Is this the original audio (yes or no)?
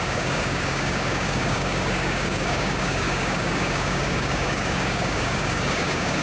no